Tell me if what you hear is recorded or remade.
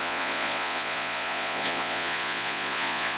remade